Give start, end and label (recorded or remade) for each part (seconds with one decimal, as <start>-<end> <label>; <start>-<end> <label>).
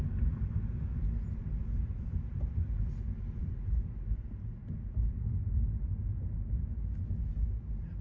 0.0-8.0 recorded